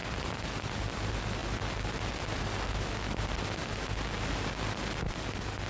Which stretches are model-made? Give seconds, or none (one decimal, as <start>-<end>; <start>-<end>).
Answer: 0.0-0.9

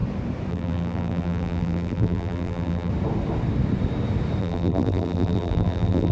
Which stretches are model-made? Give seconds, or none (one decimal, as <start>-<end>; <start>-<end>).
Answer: 0.5-2.9; 4.4-6.1